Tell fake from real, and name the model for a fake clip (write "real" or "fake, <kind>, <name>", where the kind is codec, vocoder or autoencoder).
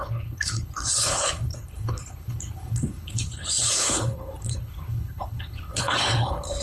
fake, codec, HILCodec